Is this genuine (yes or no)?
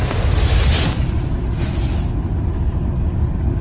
yes